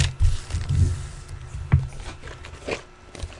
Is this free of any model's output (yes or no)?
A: yes